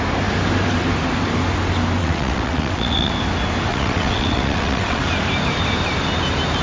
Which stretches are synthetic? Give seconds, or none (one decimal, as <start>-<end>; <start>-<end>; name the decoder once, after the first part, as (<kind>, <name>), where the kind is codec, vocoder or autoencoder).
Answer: 2.0-3.1 (vocoder, WaveNeXt); 3.7-5.0